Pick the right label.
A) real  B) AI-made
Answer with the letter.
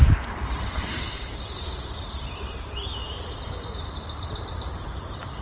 B